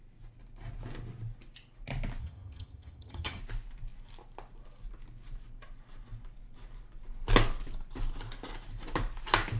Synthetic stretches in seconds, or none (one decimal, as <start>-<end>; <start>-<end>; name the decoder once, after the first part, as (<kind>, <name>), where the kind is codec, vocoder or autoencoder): 2.2-3.4 (vocoder, HiFi-GAN)